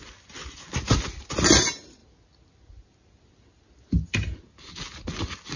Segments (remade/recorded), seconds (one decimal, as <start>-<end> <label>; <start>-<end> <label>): 0.0-5.6 recorded